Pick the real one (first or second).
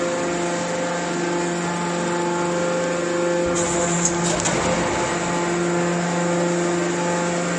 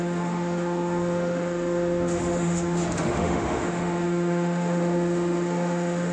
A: first